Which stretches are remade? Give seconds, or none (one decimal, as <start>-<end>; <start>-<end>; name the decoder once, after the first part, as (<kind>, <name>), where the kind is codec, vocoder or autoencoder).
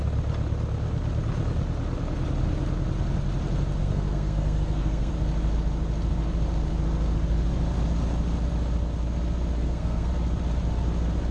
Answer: 3.8-5.1 (codec, SNAC); 9.6-10.1